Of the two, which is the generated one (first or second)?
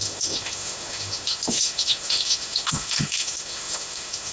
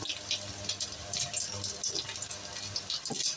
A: first